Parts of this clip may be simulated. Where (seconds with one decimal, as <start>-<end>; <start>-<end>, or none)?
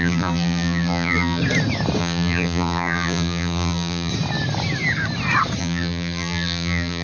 0.0-1.4; 2.0-4.1; 5.6-7.0